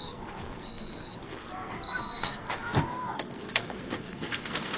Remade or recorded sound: remade